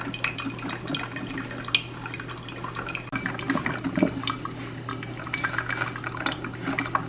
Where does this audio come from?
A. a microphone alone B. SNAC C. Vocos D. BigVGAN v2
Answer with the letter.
A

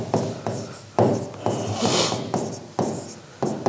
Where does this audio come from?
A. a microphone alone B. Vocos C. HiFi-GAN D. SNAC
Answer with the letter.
A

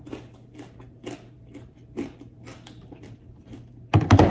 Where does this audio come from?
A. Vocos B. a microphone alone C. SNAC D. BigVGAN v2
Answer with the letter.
B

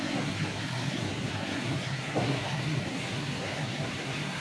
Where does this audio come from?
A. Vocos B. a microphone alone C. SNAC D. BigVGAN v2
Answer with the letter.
C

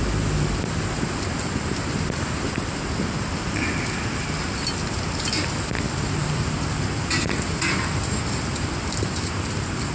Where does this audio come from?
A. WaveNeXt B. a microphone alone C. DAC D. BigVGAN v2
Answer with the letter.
B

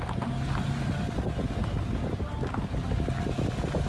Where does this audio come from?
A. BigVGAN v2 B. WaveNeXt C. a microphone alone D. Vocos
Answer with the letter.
C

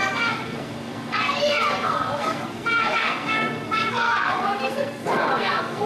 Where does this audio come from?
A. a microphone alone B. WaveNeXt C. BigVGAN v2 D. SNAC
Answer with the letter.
D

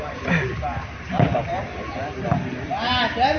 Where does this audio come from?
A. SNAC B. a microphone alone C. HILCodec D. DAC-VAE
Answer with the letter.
B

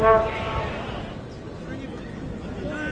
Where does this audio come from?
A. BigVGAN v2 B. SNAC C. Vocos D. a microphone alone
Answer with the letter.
D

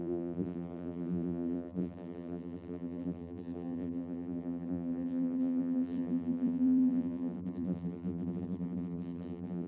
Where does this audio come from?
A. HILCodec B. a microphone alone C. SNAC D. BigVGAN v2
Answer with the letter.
D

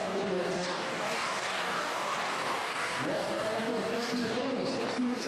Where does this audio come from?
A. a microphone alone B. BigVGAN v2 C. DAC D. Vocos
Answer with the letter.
C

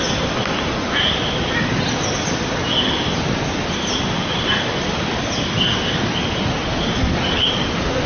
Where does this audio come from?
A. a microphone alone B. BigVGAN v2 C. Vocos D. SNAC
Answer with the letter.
A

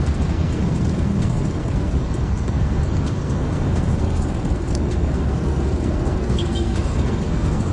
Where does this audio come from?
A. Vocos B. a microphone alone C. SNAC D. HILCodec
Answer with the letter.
C